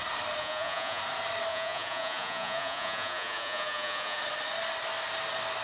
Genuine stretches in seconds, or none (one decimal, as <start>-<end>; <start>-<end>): 0.0-0.4; 1.0-1.5; 4.2-5.6